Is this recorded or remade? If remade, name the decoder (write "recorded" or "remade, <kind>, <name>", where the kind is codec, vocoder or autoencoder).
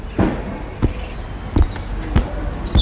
recorded